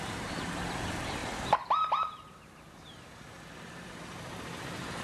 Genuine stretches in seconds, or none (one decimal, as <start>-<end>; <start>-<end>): none